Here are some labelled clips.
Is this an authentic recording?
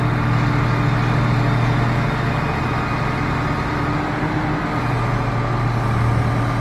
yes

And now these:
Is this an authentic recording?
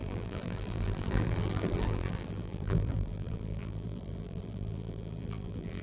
no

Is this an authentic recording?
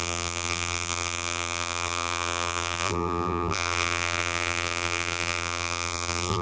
no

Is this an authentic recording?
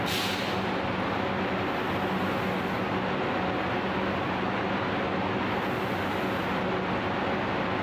yes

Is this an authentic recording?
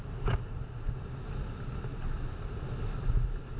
yes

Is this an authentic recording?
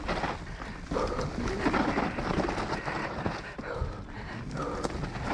yes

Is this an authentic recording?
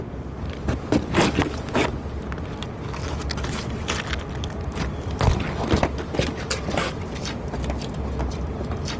yes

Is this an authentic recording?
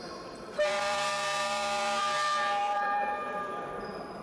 no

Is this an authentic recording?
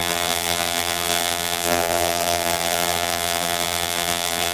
no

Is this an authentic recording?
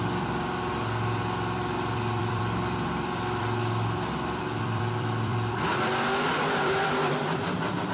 no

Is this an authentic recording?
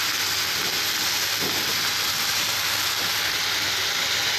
yes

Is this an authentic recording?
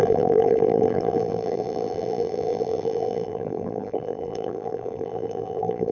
no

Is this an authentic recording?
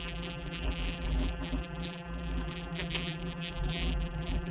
no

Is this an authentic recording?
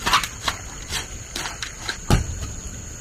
yes